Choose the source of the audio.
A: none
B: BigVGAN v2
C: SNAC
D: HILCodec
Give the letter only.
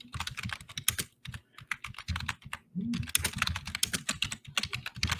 A